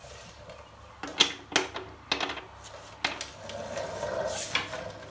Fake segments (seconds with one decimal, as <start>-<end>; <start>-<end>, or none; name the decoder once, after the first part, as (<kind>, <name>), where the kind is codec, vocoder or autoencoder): none